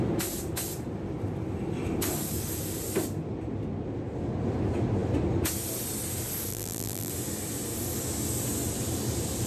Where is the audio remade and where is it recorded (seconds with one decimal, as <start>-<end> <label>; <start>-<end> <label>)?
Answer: 0.0-6.5 recorded; 6.5-7.1 remade; 7.1-9.5 recorded

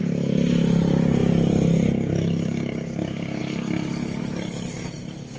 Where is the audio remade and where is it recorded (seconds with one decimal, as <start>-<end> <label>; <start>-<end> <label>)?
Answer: 0.0-5.4 recorded

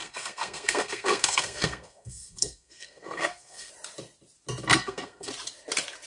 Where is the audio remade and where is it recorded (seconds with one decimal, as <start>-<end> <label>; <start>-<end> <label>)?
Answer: 0.0-3.7 remade; 3.7-4.7 recorded; 4.7-5.3 remade; 5.3-6.1 recorded

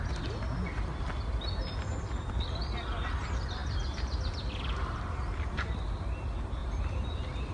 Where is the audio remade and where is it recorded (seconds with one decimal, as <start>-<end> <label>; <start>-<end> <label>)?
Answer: 0.0-7.5 recorded

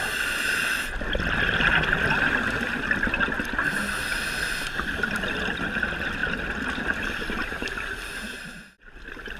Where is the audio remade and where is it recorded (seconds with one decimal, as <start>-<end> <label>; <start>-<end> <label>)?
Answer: 0.0-9.4 recorded

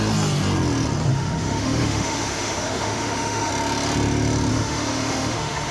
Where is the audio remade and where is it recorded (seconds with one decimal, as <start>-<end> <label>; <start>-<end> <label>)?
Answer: 0.0-1.1 recorded; 1.1-3.5 remade; 3.5-4.5 recorded; 4.5-5.7 remade

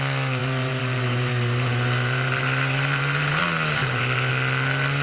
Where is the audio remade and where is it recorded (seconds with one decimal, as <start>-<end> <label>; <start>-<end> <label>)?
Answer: 0.0-0.4 recorded; 0.4-3.4 remade; 3.4-3.8 recorded; 3.8-4.3 remade; 4.3-5.0 recorded

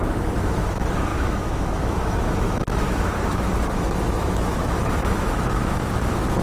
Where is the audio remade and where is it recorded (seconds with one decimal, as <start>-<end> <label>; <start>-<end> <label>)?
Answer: 0.0-6.4 remade